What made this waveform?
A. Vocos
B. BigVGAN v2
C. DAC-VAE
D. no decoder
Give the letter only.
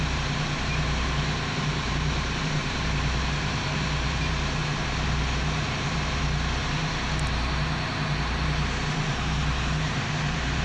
B